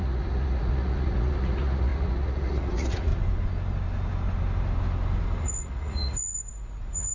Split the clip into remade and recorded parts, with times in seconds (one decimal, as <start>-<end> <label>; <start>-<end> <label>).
0.0-3.1 remade; 3.1-5.4 recorded; 5.4-7.1 remade